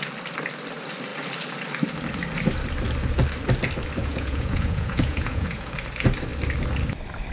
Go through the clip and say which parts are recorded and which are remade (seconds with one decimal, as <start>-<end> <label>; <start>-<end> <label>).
0.0-4.0 recorded; 4.0-5.7 remade; 5.7-7.3 recorded